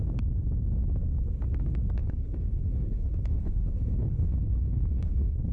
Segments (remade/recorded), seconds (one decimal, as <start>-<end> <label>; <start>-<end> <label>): 0.0-2.0 recorded; 2.0-5.5 remade